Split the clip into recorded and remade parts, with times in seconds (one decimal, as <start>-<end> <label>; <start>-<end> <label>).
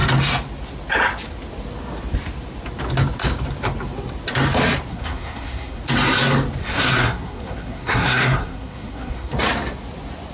0.0-4.9 recorded; 4.9-5.8 remade; 5.8-6.6 recorded; 6.6-9.3 remade; 9.3-10.3 recorded